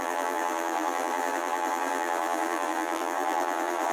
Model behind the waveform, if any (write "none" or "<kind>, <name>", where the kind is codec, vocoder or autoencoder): vocoder, BigVGAN v2